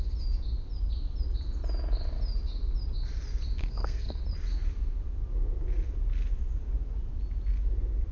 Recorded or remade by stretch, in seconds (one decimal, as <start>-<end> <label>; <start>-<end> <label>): 0.0-3.6 recorded; 3.6-4.2 remade; 4.2-8.1 recorded

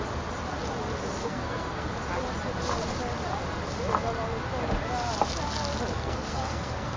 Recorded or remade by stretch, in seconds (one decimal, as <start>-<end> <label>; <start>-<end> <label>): 0.0-1.2 recorded; 1.2-1.9 remade; 1.9-5.9 recorded; 5.9-7.0 remade

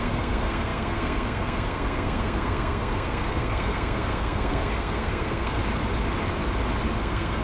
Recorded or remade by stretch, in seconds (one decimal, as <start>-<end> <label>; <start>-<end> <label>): 0.0-5.6 remade; 5.6-7.0 recorded; 7.0-7.4 remade

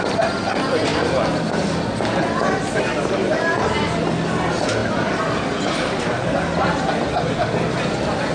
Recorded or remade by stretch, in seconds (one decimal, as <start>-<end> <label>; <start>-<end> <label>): 0.0-8.3 recorded